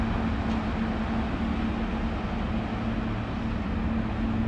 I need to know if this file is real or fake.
real